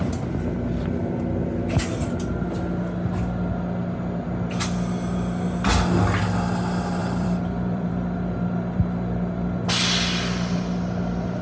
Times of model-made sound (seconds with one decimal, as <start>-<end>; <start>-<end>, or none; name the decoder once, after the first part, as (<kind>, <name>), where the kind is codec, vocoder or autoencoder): 7.0-7.9 (vocoder, BigVGAN v2)